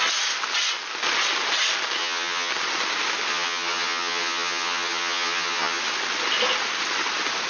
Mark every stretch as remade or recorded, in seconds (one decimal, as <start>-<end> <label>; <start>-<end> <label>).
0.0-2.0 recorded; 2.0-2.5 remade; 2.5-3.3 recorded; 3.3-5.8 remade; 5.8-7.5 recorded